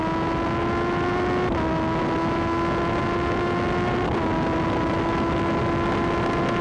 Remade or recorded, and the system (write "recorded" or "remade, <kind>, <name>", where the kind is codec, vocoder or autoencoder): recorded